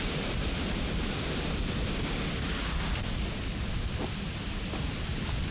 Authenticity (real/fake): real